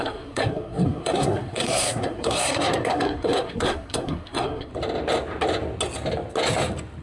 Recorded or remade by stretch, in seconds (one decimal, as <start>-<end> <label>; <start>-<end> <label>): 0.0-4.7 remade; 4.7-7.0 recorded